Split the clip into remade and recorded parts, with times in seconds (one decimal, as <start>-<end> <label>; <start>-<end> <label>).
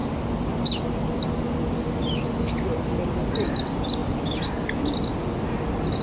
0.0-6.0 recorded